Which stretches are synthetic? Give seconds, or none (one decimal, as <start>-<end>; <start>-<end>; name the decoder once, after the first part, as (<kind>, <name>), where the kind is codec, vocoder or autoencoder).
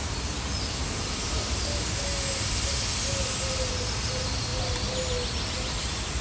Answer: 0.0-3.7 (vocoder, BigVGAN v2); 4.5-5.1